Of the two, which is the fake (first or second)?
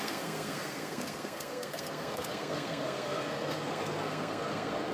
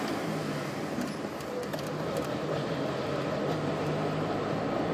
first